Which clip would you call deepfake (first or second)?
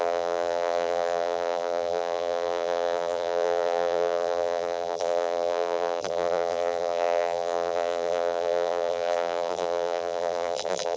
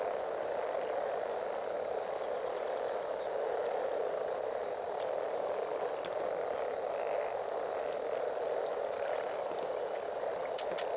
first